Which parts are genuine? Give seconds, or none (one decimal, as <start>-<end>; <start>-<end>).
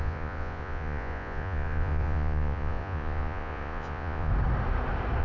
4.3-5.2